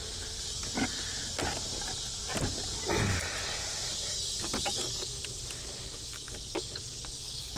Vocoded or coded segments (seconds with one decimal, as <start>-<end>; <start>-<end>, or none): 4.1-5.2; 5.9-7.6